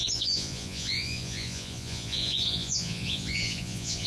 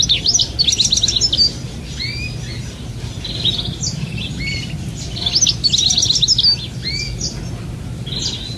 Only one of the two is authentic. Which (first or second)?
second